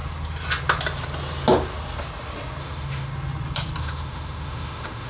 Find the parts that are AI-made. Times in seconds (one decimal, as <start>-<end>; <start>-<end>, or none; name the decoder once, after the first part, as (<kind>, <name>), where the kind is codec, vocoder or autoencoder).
2.6-3.1 (autoencoder, DAC-VAE); 3.8-5.1